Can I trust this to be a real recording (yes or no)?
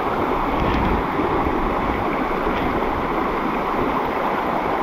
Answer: yes